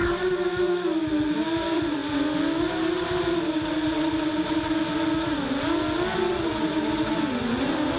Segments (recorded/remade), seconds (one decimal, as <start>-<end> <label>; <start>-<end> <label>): 0.0-8.0 recorded